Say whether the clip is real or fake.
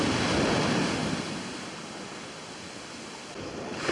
real